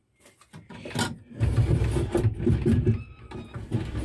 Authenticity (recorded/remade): recorded